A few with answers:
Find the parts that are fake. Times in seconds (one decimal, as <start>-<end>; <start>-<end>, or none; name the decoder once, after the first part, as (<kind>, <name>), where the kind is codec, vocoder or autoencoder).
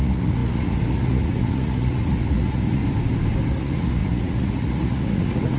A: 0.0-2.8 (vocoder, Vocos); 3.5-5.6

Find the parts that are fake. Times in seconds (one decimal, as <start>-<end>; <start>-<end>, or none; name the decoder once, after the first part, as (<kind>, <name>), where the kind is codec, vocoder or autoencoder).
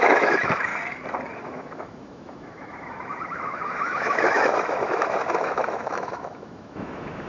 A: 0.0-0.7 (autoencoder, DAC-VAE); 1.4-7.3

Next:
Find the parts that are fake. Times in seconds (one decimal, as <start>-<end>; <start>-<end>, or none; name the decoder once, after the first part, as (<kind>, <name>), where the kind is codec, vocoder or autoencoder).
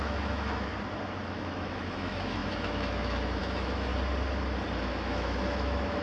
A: 0.0-0.7 (autoencoder, DAC-VAE); 1.3-3.9; 4.9-6.0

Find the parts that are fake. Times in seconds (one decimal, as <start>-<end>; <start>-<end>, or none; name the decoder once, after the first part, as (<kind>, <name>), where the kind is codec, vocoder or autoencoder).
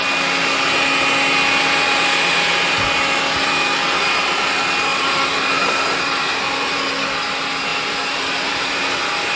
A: 4.9-6.8 (vocoder, BigVGAN v2); 7.7-8.8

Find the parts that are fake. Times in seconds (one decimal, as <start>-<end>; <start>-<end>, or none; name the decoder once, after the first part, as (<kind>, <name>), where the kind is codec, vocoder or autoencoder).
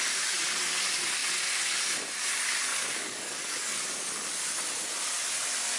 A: 2.7-4.3 (codec, DAC)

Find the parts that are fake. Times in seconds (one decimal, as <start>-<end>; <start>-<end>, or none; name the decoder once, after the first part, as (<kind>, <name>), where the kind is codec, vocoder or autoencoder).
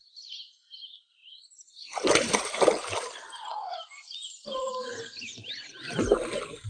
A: 1.2-4.7 (vocoder, BigVGAN v2)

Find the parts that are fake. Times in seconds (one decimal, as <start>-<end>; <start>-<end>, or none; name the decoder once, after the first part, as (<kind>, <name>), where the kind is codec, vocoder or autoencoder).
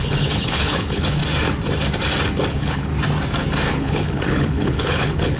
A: 0.0-1.2 (codec, HILCodec); 2.5-2.9; 3.7-5.4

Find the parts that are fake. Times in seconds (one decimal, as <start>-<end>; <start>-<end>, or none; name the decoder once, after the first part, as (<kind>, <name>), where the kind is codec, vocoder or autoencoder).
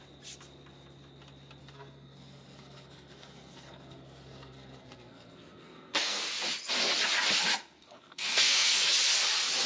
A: 1.6-6.2 (codec, SNAC); 7.5-8.9